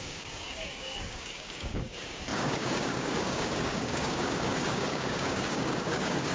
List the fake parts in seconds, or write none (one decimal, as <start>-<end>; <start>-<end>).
0.0-6.3